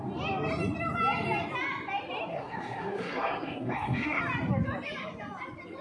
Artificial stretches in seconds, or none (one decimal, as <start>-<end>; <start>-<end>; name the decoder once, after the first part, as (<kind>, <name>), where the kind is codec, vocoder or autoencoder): 2.3-4.2 (codec, SNAC)